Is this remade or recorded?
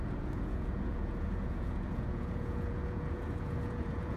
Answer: remade